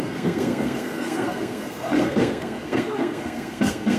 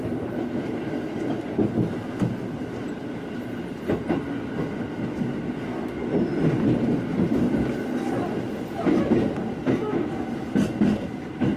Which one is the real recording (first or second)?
second